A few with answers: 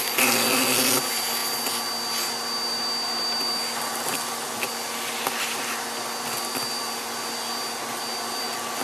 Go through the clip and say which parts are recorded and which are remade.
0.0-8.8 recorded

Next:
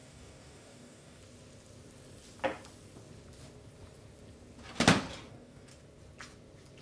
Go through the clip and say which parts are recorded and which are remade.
0.0-1.2 remade; 1.2-5.3 recorded; 5.3-5.7 remade; 5.7-6.8 recorded

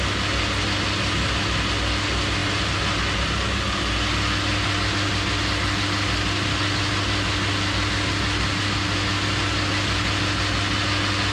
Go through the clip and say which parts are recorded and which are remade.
0.0-11.3 recorded

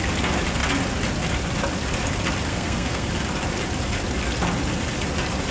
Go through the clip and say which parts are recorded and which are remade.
0.0-2.5 recorded; 2.5-3.1 remade; 3.1-5.5 recorded

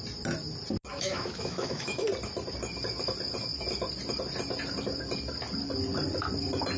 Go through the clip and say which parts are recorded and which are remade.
0.0-0.9 recorded; 0.9-2.1 remade; 2.1-6.8 recorded

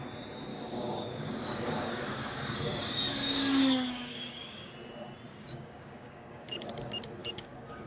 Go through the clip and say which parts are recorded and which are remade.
0.0-0.5 recorded; 0.5-4.7 remade; 4.7-5.3 recorded; 5.3-6.7 remade; 6.7-7.2 recorded; 7.2-7.9 remade

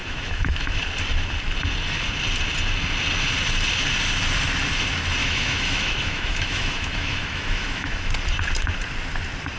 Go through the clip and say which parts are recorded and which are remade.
0.0-0.8 remade; 0.8-5.2 recorded; 5.2-8.1 remade; 8.1-9.6 recorded